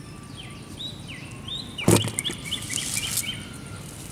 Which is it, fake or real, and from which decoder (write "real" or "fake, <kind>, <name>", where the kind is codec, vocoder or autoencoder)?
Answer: real